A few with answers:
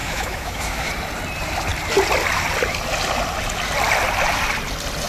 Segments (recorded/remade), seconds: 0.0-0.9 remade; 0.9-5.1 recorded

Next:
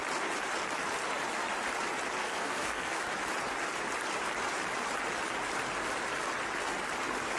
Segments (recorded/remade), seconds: 0.0-2.2 recorded; 2.2-3.0 remade; 3.0-7.4 recorded